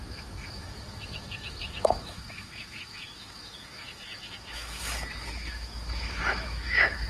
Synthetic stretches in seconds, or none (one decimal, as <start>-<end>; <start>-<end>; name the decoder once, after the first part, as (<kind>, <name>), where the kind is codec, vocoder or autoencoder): 0.0-7.1 (autoencoder, DAC-VAE)